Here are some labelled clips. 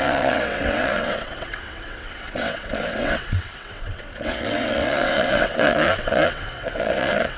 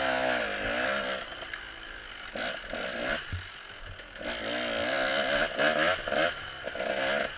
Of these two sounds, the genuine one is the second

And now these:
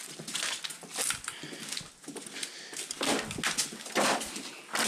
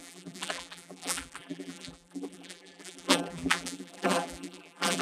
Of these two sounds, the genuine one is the first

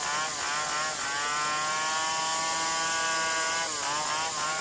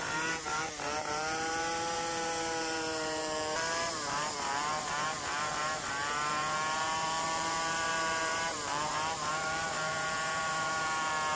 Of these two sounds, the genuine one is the first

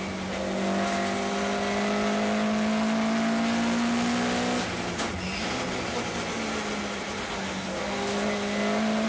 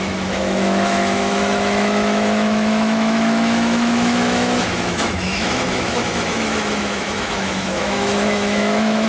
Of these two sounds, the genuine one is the first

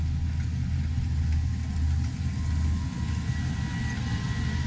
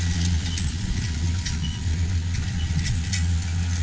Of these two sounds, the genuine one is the first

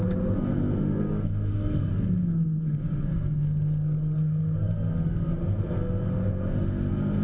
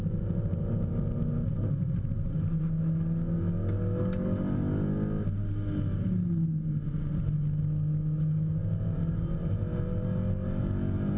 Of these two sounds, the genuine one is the second